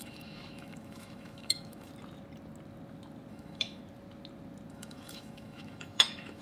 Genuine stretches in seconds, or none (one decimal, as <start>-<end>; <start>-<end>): 1.9-3.3; 3.8-4.7